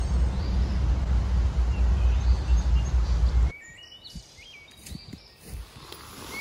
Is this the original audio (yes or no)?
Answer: yes